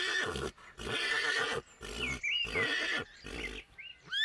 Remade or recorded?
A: recorded